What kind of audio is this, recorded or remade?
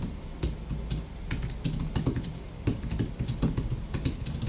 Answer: recorded